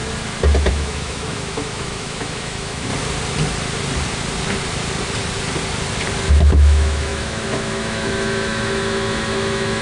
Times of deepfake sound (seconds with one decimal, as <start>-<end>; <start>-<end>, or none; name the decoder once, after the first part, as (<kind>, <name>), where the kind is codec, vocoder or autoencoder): 0.7-2.9 (autoencoder, DAC-VAE); 6.3-9.8